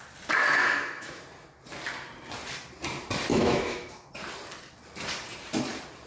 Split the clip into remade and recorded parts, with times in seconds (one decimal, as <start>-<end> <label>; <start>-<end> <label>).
0.0-0.6 recorded; 0.6-1.2 remade; 1.2-3.3 recorded; 3.3-4.1 remade; 4.1-6.1 recorded